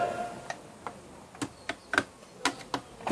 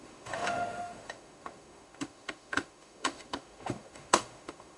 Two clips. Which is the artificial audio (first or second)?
second